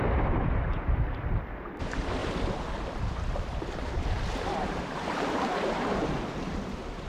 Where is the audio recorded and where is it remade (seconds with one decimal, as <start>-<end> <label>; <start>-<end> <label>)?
0.0-0.7 remade; 0.7-1.4 recorded; 1.4-2.2 remade; 2.2-3.4 recorded; 3.4-7.1 remade